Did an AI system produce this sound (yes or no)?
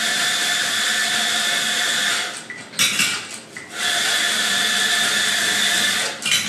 no